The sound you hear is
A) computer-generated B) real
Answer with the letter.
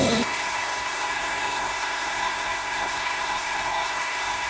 A